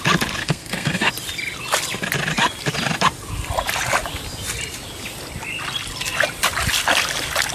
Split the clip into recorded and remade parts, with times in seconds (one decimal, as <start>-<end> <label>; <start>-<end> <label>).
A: 0.0-0.4 recorded; 0.4-1.1 remade; 1.1-7.5 recorded